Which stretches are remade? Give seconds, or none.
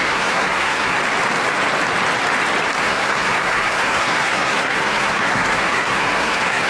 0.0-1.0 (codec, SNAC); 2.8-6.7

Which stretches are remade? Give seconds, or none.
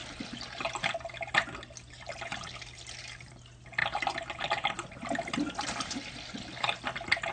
none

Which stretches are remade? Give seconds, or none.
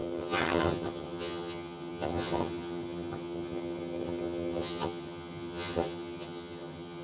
0.0-7.0 (vocoder, HiFi-GAN)